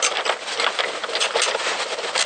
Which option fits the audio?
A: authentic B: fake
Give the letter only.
A